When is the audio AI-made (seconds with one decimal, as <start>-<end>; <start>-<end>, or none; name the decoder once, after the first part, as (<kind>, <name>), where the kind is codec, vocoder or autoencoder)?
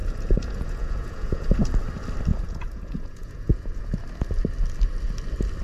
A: 0.0-1.7 (vocoder, Vocos); 2.3-3.9